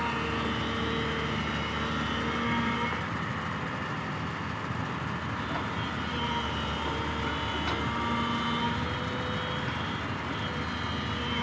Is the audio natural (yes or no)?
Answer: yes